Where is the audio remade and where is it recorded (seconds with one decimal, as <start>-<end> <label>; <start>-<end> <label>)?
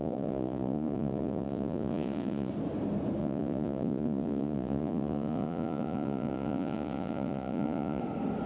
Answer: 0.0-2.5 remade; 2.5-3.2 recorded; 3.2-8.0 remade; 8.0-8.5 recorded